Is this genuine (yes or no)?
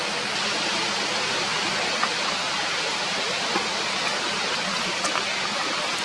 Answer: yes